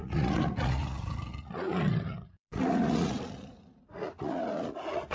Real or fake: fake